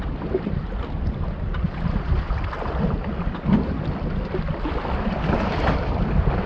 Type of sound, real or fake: real